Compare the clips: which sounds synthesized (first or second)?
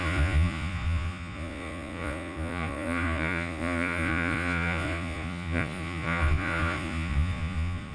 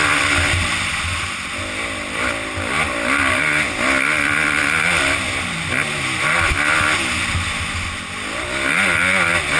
first